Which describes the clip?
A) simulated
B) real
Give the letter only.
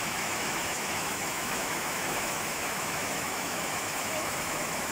A